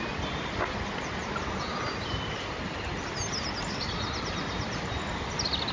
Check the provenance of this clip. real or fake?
real